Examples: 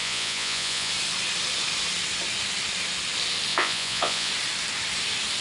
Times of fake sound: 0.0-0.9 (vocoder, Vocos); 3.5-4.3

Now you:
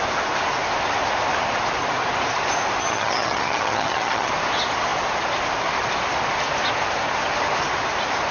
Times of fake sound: 2.8-4.3 (vocoder, HiFi-GAN)